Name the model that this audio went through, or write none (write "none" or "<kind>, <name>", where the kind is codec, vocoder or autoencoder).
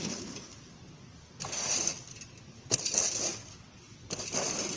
none